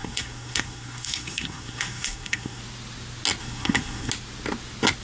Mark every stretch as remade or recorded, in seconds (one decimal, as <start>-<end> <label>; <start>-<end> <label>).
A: 0.0-2.6 remade; 2.6-3.4 recorded; 3.4-4.1 remade; 4.1-5.0 recorded